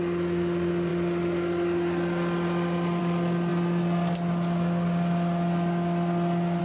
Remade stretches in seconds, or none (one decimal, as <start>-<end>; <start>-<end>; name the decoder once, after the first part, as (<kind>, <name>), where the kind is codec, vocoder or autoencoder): none